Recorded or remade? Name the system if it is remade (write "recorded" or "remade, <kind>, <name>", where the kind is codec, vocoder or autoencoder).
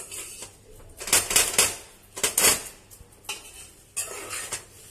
recorded